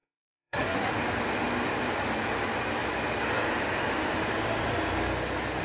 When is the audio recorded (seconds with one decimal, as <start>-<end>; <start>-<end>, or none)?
0.9-5.6